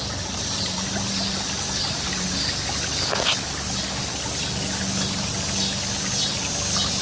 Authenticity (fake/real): real